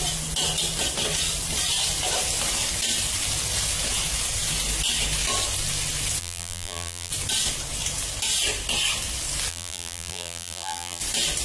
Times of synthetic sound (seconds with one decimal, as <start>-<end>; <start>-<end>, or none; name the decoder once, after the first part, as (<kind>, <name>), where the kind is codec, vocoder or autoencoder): 6.2-7.1 (vocoder, BigVGAN v2); 9.5-11.0